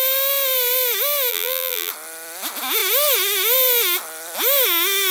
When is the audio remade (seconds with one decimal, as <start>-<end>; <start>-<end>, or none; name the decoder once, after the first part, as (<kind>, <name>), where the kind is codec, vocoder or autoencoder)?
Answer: 1.3-1.9 (vocoder, BigVGAN v2)